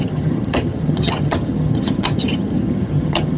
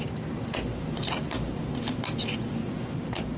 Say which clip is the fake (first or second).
first